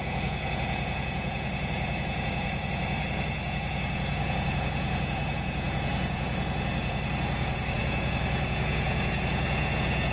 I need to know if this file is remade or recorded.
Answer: remade